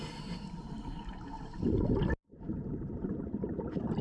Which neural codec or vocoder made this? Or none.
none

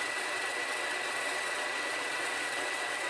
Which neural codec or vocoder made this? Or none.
vocoder, WaveNeXt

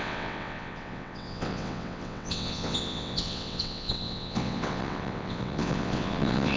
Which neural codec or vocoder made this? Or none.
vocoder, WaveNeXt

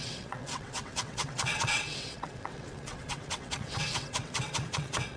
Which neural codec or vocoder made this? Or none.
vocoder, WaveNeXt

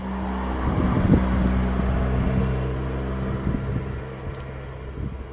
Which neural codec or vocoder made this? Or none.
none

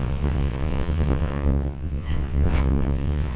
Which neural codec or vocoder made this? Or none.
vocoder, WaveNeXt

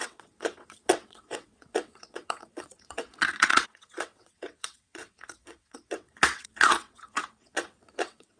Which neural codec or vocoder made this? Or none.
vocoder, WaveNeXt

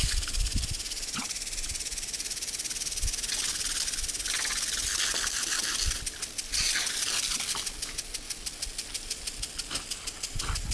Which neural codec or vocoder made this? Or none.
none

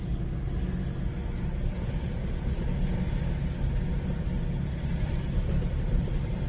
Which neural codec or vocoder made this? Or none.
none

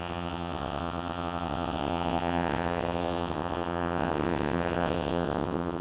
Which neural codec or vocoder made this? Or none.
vocoder, WaveNeXt